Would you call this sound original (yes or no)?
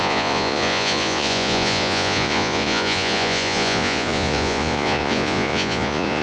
no